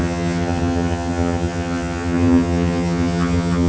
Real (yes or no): no